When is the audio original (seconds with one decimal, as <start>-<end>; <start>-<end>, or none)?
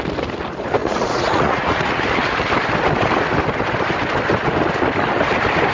0.0-0.8; 2.0-5.7